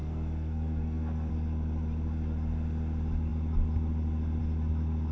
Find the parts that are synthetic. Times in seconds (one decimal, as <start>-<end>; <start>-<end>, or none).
0.0-1.3